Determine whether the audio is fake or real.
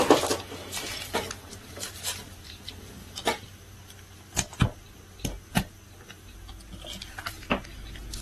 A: real